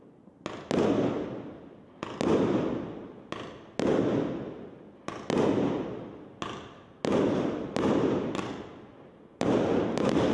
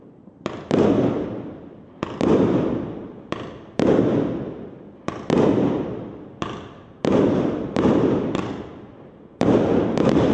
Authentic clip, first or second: first